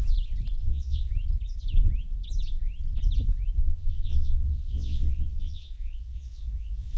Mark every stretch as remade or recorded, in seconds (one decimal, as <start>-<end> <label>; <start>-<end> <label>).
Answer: 0.0-0.6 recorded; 0.6-1.1 remade; 1.1-3.6 recorded; 3.6-7.0 remade

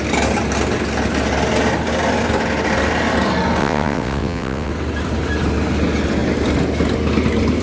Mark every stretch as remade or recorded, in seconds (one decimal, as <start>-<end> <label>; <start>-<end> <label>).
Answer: 0.0-3.6 recorded; 3.6-4.7 remade; 4.7-7.6 recorded

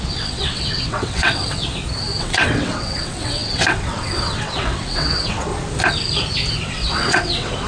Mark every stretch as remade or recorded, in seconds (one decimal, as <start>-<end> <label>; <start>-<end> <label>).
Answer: 0.0-1.6 remade; 1.6-2.2 recorded; 2.2-5.5 remade; 5.5-6.6 recorded; 6.6-7.7 remade

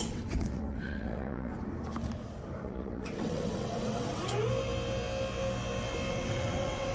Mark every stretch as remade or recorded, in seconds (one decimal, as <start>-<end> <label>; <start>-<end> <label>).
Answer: 0.0-1.5 remade; 1.5-2.6 recorded; 2.6-4.2 remade; 4.2-6.1 recorded; 6.1-6.9 remade

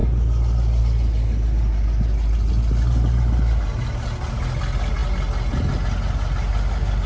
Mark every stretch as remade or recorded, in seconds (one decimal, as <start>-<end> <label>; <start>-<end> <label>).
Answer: 0.0-7.1 recorded

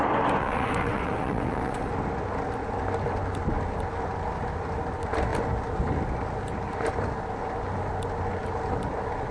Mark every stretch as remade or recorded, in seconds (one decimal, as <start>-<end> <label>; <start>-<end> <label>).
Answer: 0.0-0.4 recorded; 0.4-1.9 remade; 1.9-9.3 recorded